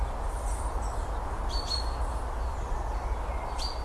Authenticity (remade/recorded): recorded